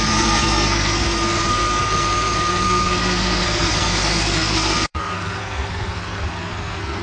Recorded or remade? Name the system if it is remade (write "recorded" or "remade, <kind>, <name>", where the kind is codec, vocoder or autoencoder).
remade, codec, SNAC